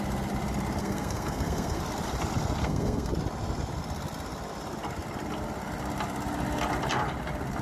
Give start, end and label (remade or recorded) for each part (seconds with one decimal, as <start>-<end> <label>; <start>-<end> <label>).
0.0-0.8 recorded; 0.8-1.8 remade; 1.8-2.6 recorded; 2.6-3.1 remade; 3.1-7.6 recorded